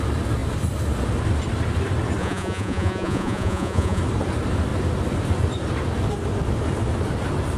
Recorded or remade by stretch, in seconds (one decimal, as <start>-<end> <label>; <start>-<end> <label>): 0.0-2.2 recorded; 2.2-4.0 remade; 4.0-7.6 recorded